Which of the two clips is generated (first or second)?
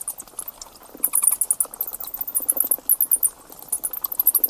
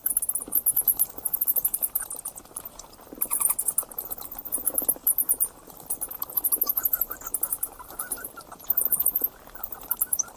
second